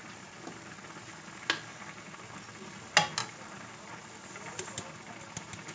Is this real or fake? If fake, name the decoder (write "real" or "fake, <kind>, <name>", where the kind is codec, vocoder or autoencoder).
real